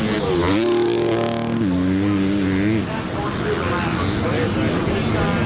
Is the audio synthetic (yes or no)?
no